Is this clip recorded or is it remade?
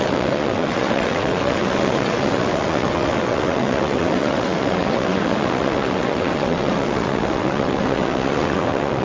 remade